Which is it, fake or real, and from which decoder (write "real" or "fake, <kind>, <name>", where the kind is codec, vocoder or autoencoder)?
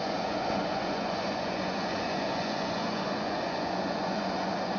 fake, vocoder, Vocos